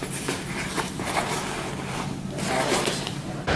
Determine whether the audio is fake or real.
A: real